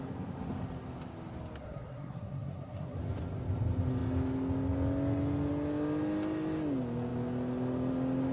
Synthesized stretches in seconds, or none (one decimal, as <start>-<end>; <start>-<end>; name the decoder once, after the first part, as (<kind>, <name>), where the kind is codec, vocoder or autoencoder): 1.6-3.0 (codec, SNAC)